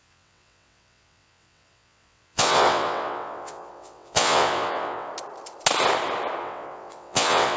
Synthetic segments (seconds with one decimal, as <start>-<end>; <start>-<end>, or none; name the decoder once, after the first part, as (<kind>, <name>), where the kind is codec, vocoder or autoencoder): 0.0-5.1 (vocoder, WaveNeXt); 6.4-7.6